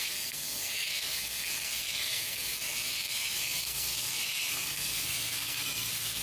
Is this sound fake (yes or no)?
yes